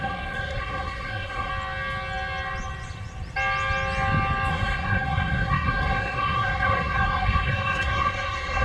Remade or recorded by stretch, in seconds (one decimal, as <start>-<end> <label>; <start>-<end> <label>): 0.0-1.5 remade; 1.5-4.5 recorded; 4.5-8.6 remade

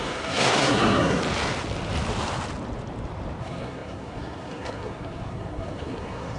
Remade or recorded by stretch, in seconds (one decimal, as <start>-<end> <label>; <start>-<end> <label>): 0.0-1.2 remade; 1.2-3.4 recorded; 3.4-6.4 remade

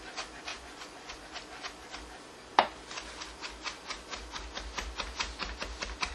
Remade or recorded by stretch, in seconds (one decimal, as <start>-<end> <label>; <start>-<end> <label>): 0.0-0.5 recorded; 0.5-1.2 remade; 1.2-6.1 recorded

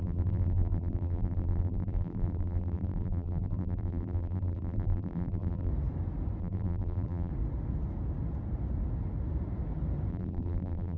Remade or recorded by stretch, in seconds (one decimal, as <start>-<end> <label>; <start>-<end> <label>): 0.0-5.7 remade; 5.7-6.4 recorded; 6.4-7.3 remade; 7.3-10.1 recorded; 10.1-11.0 remade

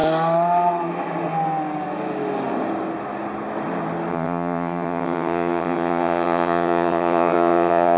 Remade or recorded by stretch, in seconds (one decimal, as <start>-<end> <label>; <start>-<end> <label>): 0.0-4.1 recorded; 4.1-8.0 remade

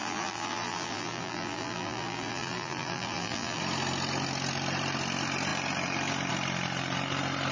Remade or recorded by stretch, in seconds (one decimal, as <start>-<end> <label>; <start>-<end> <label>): 0.0-3.6 remade; 3.6-7.5 recorded